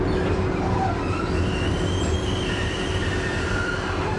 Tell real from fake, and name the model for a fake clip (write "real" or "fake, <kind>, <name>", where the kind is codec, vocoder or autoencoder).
real